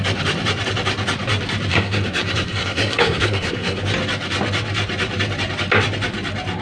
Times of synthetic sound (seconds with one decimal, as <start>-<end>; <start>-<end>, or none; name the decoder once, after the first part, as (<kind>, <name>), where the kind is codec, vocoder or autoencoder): 1.7-3.8 (codec, SNAC)